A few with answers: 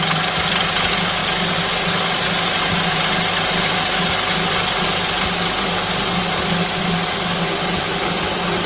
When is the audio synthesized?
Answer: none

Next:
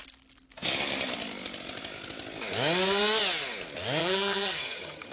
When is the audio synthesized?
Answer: 4.0-5.1 (vocoder, HiFi-GAN)

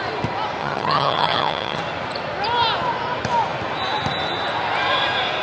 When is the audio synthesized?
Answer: 0.6-1.8 (vocoder, HiFi-GAN)

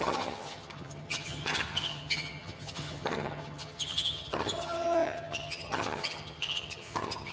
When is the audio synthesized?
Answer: 0.0-7.3 (vocoder, HiFi-GAN)

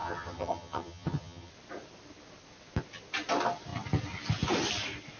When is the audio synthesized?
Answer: 0.0-1.5 (vocoder, HiFi-GAN)

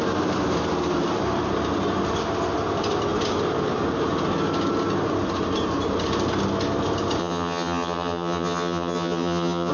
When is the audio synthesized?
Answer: 7.2-9.7 (vocoder, HiFi-GAN)

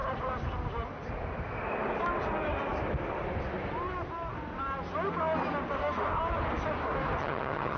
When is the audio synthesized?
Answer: 7.2-7.8 (vocoder, HiFi-GAN)